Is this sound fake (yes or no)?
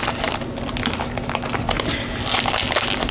no